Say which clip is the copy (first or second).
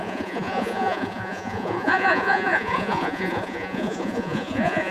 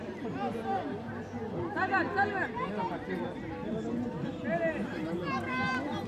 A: first